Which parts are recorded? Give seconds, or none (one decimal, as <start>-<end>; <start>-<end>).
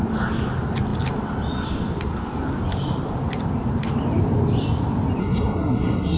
0.0-5.2